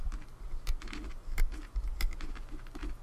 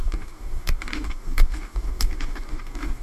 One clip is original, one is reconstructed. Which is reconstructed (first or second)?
second